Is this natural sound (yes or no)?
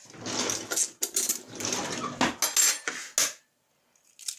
yes